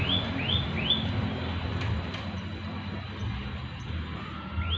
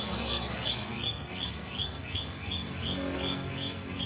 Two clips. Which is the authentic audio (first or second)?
first